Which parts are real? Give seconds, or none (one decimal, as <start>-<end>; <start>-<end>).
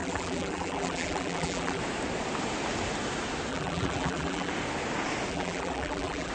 1.8-3.5; 4.5-5.3